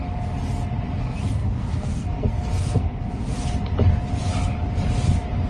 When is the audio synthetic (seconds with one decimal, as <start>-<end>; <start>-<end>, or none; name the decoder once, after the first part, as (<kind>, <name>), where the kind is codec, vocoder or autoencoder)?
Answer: 1.4-3.1 (codec, SNAC)